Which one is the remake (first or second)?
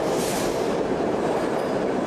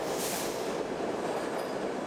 first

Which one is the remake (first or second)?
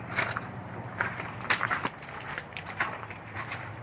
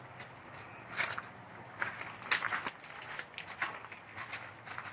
first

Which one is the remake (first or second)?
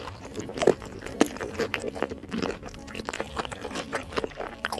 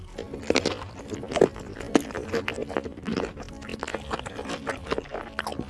first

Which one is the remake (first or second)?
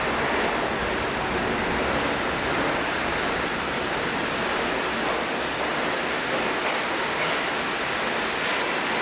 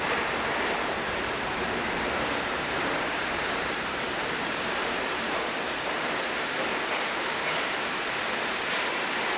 second